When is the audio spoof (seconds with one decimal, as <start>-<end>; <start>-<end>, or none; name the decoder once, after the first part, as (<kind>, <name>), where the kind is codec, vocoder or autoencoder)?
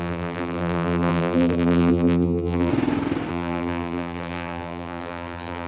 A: 0.0-2.7 (vocoder, BigVGAN v2); 3.3-5.7